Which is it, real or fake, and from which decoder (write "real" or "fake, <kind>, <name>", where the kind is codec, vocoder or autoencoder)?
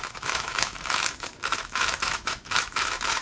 fake, autoencoder, DAC-VAE